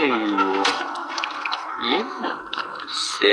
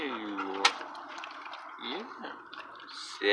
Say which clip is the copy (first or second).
first